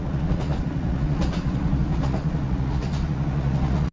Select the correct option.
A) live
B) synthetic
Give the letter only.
B